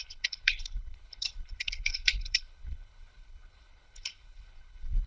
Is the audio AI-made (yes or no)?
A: yes